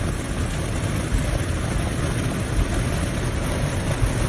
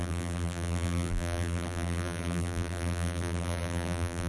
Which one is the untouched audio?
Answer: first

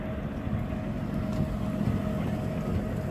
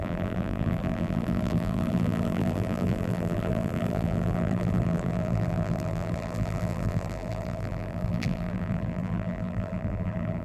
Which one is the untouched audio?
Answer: first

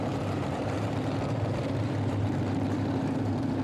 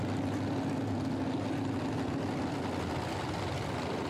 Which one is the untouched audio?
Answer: second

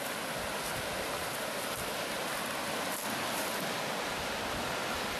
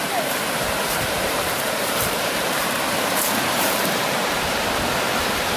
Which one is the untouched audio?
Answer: first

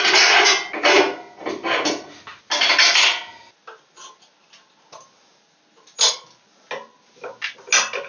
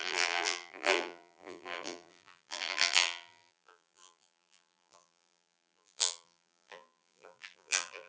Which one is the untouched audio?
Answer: first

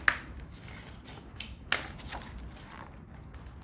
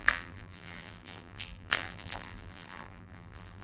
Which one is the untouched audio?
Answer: first